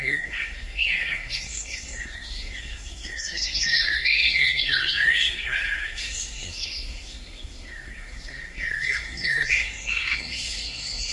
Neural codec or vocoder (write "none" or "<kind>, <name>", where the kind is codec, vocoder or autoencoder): codec, SNAC